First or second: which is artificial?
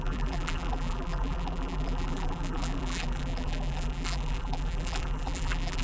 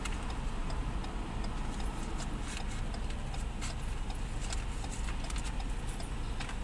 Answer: first